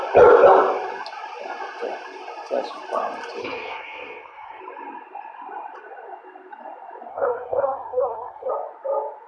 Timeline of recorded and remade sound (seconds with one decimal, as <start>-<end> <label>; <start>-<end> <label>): 0.0-3.4 recorded; 3.4-4.6 remade; 4.6-7.1 recorded; 7.1-8.5 remade; 8.5-9.3 recorded